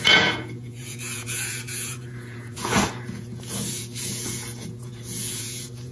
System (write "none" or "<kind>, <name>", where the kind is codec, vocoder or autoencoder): vocoder, Vocos